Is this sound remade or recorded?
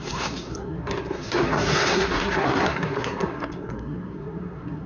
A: remade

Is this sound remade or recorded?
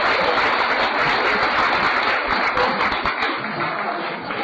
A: recorded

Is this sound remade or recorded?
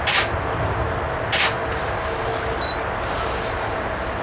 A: recorded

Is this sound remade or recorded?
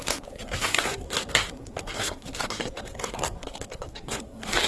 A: remade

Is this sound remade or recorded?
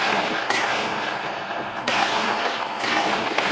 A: remade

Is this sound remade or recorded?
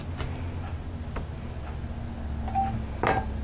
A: recorded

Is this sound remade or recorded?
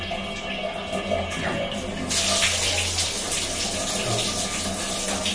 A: recorded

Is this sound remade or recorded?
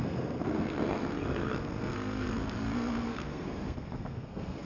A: remade